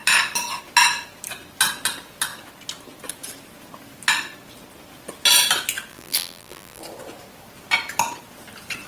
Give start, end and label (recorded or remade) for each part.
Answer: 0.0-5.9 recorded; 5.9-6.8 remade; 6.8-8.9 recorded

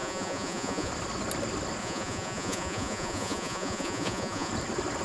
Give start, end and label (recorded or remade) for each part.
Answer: 0.0-0.9 remade; 0.9-1.8 recorded; 1.8-4.5 remade; 4.5-5.0 recorded

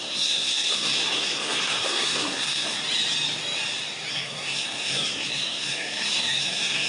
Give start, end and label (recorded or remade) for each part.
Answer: 0.0-2.8 remade; 2.8-4.1 recorded; 4.1-6.9 remade

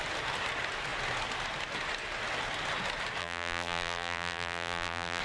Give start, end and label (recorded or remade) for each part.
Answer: 0.0-3.2 recorded; 3.2-5.2 remade

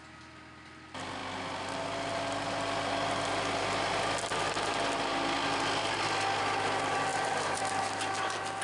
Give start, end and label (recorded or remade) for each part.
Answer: 0.0-7.1 recorded; 7.1-7.6 remade; 7.6-8.6 recorded